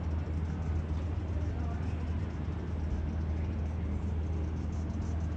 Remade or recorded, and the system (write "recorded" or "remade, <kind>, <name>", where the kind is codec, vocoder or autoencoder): recorded